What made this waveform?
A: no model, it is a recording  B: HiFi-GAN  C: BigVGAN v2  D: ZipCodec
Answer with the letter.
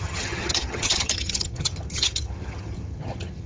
B